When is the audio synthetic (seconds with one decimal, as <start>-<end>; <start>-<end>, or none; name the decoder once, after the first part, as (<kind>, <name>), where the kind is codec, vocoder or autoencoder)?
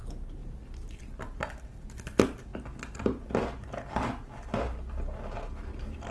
none